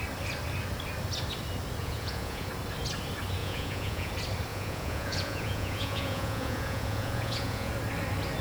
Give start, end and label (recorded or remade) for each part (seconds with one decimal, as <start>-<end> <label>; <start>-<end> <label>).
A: 0.0-1.8 recorded; 1.8-2.5 remade; 2.5-3.4 recorded; 3.4-4.1 remade; 4.1-4.5 recorded; 4.5-7.7 remade; 7.7-8.4 recorded